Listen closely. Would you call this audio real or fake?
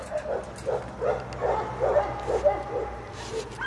real